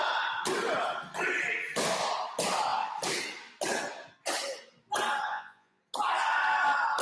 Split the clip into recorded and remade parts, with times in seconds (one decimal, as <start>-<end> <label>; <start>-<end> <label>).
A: 0.0-5.3 recorded; 5.3-5.8 remade; 5.8-7.0 recorded